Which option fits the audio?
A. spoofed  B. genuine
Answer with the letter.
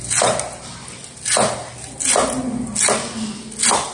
B